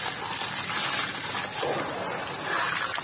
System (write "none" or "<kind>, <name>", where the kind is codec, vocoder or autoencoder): none